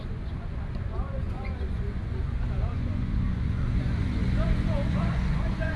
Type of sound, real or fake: fake